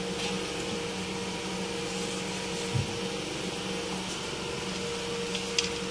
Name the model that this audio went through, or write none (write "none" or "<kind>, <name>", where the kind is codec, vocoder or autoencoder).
none